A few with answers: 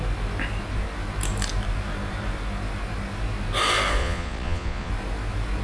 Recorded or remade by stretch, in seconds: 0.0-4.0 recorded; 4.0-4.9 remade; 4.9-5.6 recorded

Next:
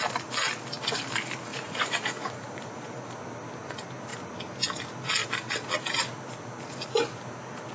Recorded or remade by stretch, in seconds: 0.0-1.5 recorded; 1.5-3.1 remade; 3.1-7.7 recorded

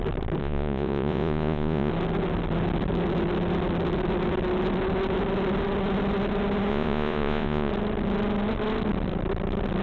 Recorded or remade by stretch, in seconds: 0.0-0.4 recorded; 0.4-1.9 remade; 1.9-6.7 recorded; 6.7-7.7 remade; 7.7-9.8 recorded